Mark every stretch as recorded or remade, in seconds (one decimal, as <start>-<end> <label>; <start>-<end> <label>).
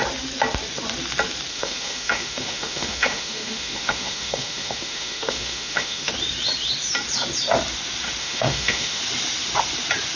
0.0-1.5 recorded; 1.5-6.1 remade; 6.1-8.2 recorded; 8.2-9.0 remade; 9.0-10.2 recorded